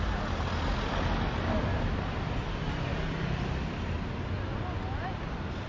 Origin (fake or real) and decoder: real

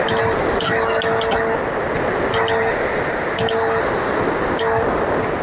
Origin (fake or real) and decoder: real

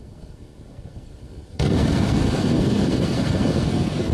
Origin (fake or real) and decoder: fake, codec, SNAC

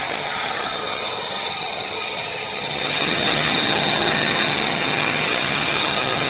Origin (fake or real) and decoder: fake, vocoder, HiFi-GAN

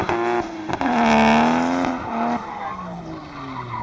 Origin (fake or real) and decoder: real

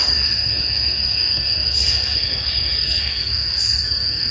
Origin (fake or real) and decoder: fake, codec, SNAC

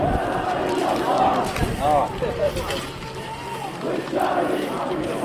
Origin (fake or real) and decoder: real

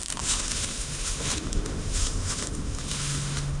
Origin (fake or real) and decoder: fake, autoencoder, DAC-VAE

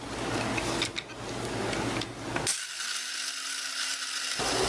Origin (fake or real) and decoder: real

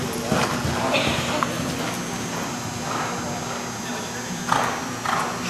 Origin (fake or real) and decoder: real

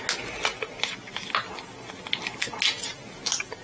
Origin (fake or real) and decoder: real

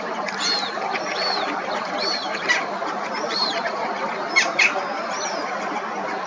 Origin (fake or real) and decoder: fake, vocoder, BigVGAN v2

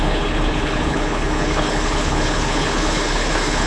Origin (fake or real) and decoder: fake, codec, HILCodec